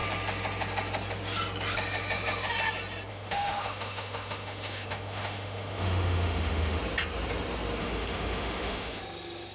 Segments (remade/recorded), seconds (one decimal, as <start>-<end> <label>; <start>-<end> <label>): 0.0-3.1 recorded; 3.1-6.8 remade; 6.8-7.8 recorded; 7.8-9.0 remade; 9.0-9.5 recorded